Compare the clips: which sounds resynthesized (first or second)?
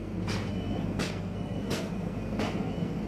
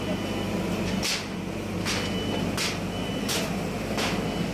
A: first